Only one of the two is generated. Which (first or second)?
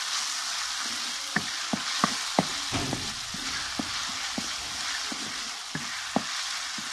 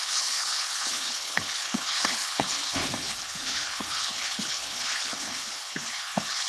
second